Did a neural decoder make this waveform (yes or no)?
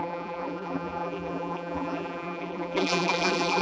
yes